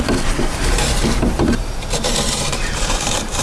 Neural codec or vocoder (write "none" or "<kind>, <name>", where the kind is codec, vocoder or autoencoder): vocoder, BigVGAN v2